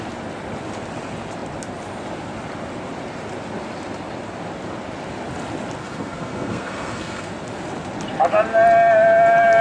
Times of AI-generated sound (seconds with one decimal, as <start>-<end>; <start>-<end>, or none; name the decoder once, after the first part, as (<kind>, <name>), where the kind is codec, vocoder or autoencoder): 5.8-7.3 (codec, SNAC)